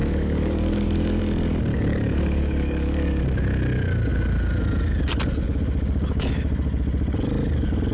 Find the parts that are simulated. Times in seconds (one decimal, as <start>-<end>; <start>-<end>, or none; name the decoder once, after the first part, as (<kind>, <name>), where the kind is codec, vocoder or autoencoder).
0.0-1.2 (codec, DAC); 1.7-3.2